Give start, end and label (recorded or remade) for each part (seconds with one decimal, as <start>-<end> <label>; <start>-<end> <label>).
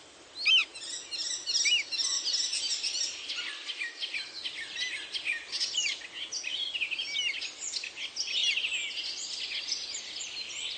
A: 0.0-10.8 recorded